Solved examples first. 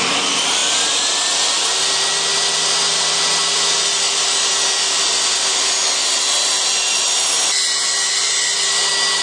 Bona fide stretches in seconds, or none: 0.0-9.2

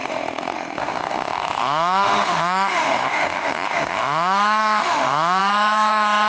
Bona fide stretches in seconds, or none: none

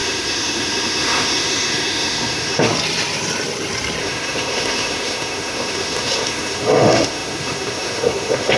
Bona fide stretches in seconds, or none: 2.7-4.0

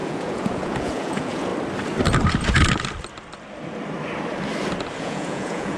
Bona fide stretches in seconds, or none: 1.5-5.0

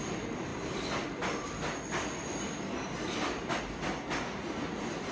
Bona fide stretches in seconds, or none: 0.0-5.1

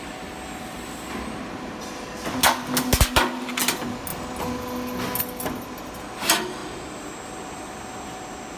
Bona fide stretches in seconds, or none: 0.0-8.6

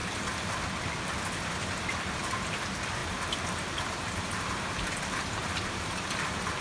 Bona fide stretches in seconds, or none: 0.0-2.3; 3.0-4.4

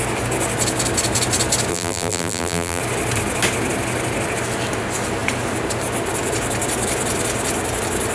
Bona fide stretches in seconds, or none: 0.0-1.7; 2.8-8.1